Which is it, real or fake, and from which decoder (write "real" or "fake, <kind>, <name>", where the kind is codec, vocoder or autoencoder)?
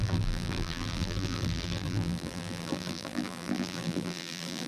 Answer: fake, vocoder, BigVGAN v2